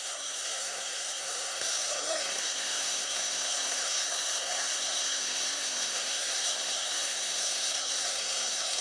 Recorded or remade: remade